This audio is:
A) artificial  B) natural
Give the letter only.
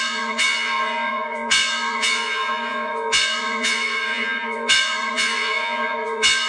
A